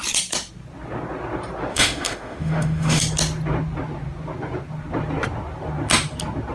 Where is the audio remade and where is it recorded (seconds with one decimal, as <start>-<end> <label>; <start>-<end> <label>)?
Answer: 0.0-1.7 recorded; 1.7-3.0 remade; 3.0-6.5 recorded